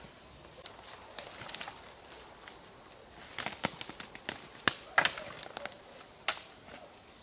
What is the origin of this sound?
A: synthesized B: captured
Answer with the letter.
B